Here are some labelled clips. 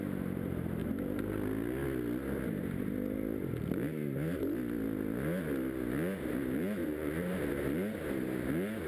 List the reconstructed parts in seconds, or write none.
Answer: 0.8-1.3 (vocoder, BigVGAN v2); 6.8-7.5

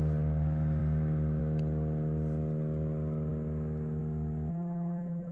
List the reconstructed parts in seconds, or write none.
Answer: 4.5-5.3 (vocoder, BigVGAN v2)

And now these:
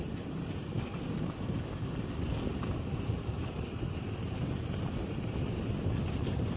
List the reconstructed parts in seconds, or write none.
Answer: 2.5-6.6 (vocoder, BigVGAN v2)

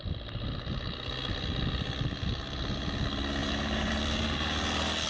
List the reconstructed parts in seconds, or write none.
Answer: 3.4-3.9 (vocoder, BigVGAN v2)

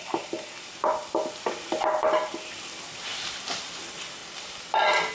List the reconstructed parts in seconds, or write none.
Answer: 0.0-5.1 (vocoder, BigVGAN v2)

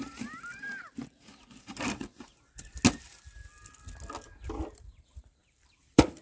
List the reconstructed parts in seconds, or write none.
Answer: 0.0-1.0 (vocoder, BigVGAN v2); 4.7-6.2